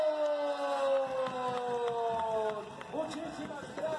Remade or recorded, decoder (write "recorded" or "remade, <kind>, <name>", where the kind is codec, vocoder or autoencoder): recorded